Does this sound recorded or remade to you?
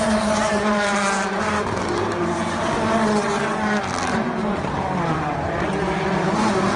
remade